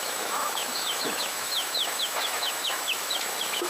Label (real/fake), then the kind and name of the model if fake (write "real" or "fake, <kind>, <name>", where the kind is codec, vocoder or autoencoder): fake, autoencoder, DAC-VAE